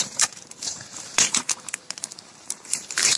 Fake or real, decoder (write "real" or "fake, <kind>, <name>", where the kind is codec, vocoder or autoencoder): fake, vocoder, BigVGAN v2